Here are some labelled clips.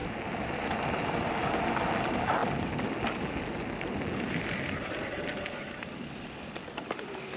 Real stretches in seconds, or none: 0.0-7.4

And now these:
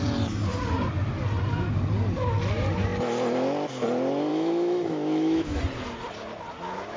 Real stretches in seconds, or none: 0.0-4.3; 5.6-7.0

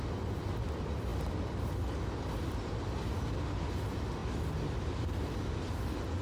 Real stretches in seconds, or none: 0.0-6.2

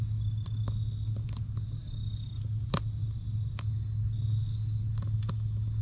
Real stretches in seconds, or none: 0.0-5.8